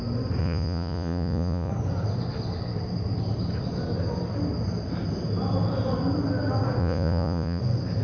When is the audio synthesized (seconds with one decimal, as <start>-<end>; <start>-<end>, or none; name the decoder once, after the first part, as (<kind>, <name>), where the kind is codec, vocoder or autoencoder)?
0.4-1.7 (vocoder, Vocos); 6.8-7.6